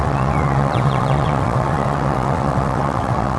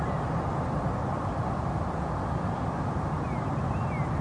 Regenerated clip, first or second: first